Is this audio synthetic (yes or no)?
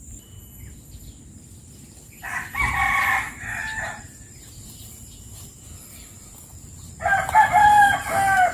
no